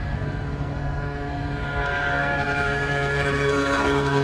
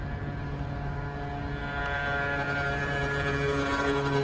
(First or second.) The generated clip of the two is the first